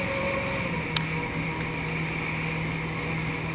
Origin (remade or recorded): recorded